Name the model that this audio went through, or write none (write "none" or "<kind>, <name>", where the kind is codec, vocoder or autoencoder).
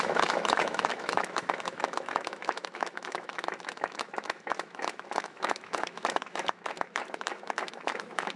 autoencoder, DAC-VAE